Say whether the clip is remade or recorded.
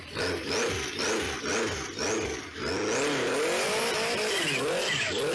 recorded